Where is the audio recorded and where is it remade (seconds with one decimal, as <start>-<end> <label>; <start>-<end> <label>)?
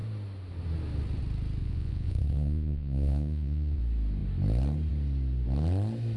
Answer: 0.0-1.6 recorded; 1.6-3.8 remade; 3.8-6.2 recorded